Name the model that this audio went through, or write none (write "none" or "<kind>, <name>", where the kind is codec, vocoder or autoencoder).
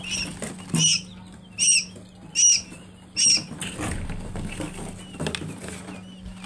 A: none